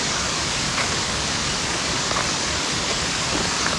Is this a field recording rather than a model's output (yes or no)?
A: no